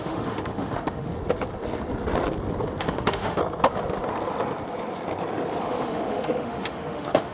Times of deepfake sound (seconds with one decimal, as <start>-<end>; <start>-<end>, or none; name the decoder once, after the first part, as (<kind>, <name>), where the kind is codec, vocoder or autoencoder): 0.0-1.1 (autoencoder, DAC-VAE); 2.8-3.4; 5.6-7.3